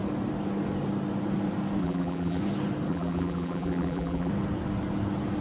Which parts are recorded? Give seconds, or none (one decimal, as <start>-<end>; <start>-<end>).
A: 0.0-1.8; 2.4-2.9; 4.3-5.4